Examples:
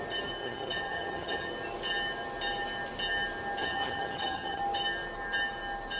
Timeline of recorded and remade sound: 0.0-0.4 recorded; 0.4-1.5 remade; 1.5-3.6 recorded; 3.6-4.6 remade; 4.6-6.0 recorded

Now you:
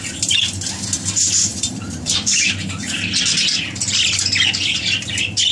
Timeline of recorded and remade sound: 0.0-1.5 recorded; 1.5-2.9 remade; 2.9-5.5 recorded

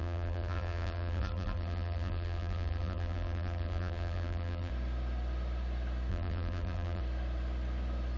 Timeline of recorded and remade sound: 0.0-4.7 remade; 4.7-6.1 recorded; 6.1-7.0 remade; 7.0-8.2 recorded

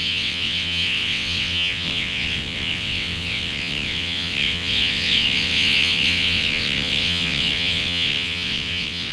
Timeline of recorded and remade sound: 0.0-9.1 remade

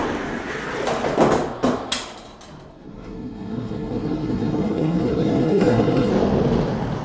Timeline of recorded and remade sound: 0.0-2.7 recorded; 2.7-6.1 remade; 6.1-7.0 recorded

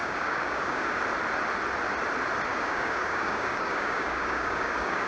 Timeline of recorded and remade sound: 0.0-1.0 remade; 1.0-2.5 recorded; 2.5-5.1 remade